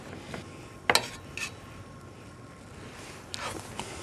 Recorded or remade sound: recorded